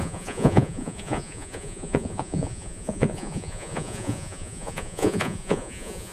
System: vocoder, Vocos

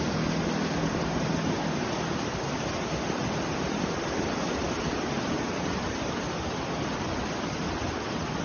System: none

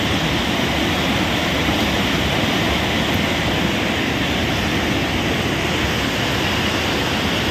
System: none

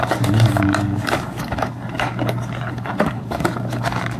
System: codec, DAC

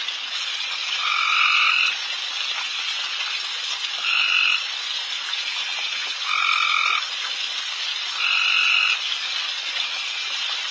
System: none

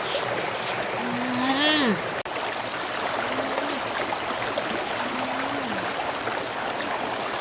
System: none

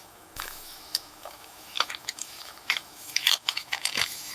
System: autoencoder, DAC-VAE